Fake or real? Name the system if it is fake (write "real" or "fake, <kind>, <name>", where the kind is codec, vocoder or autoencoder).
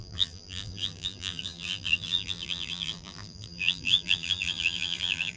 fake, vocoder, BigVGAN v2